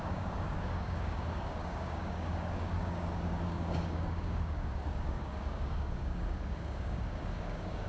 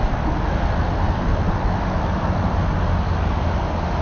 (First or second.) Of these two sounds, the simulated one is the first